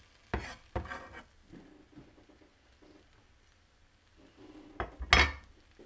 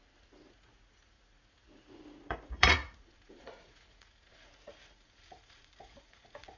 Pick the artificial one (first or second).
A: second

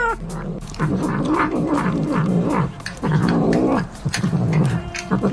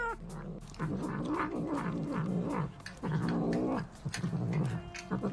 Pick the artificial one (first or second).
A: first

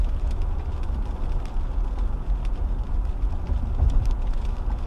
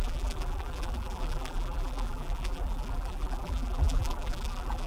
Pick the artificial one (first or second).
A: second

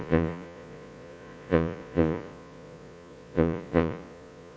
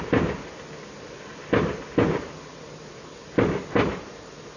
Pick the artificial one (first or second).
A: first